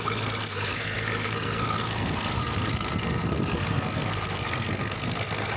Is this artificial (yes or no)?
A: yes